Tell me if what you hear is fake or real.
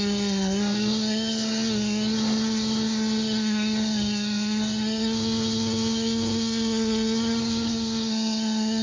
fake